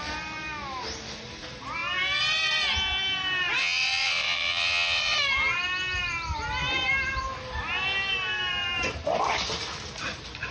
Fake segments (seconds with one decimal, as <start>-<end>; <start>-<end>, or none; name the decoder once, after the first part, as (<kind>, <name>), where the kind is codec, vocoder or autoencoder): 3.6-5.0 (vocoder, WaveNeXt)

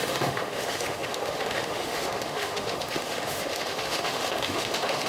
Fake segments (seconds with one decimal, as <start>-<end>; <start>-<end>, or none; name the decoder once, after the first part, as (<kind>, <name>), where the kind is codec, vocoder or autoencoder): 0.0-5.1 (autoencoder, DAC-VAE)

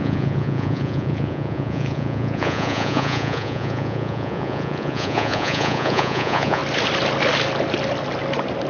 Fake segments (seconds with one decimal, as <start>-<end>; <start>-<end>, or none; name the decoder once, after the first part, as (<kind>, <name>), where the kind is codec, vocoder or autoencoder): 0.0-6.6 (vocoder, Vocos)

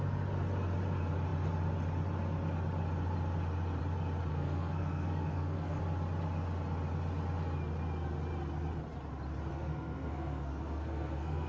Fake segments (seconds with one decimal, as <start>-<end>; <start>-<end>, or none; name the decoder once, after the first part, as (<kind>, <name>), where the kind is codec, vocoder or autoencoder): 4.3-5.8 (codec, SNAC); 9.5-11.5

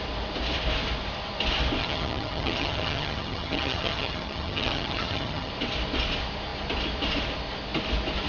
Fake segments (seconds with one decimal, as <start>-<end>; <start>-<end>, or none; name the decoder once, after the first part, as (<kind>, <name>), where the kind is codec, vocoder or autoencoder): 1.8-5.5 (vocoder, HiFi-GAN)

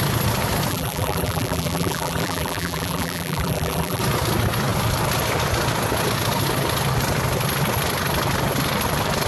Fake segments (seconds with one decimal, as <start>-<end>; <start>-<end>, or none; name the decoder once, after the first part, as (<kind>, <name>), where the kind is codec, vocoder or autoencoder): 0.7-4.0 (vocoder, BigVGAN v2)